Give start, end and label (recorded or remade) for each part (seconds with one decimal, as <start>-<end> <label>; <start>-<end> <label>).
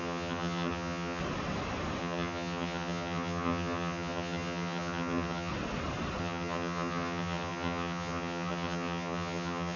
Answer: 0.0-1.2 remade; 1.2-2.0 recorded; 2.0-5.5 remade; 5.5-6.2 recorded; 6.2-9.8 remade